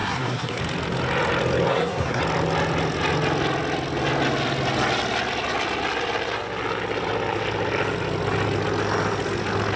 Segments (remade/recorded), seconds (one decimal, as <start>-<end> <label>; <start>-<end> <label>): 0.0-0.6 remade; 0.6-1.7 recorded; 1.7-2.2 remade; 2.2-9.8 recorded